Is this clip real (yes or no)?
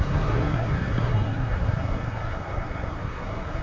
no